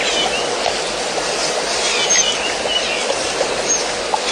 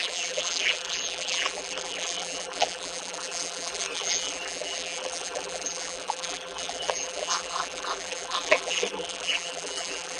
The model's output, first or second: second